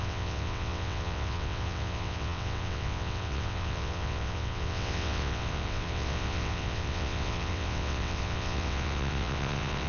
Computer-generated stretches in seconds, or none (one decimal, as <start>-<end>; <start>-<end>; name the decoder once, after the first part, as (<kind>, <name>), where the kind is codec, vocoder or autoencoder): 0.0-9.9 (vocoder, WaveNeXt)